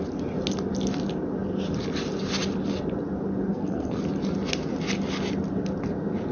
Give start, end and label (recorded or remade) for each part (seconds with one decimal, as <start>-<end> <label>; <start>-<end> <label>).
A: 0.0-3.5 recorded; 3.5-4.0 remade; 4.0-6.3 recorded